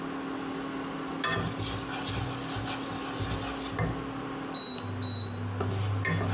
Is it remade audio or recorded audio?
recorded